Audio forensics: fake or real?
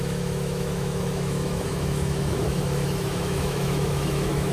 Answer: fake